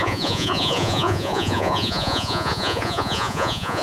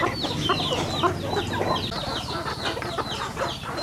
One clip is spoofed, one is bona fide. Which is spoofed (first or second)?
first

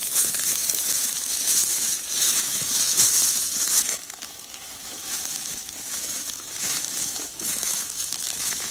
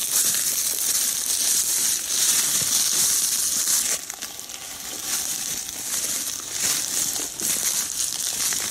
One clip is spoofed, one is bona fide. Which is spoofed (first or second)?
first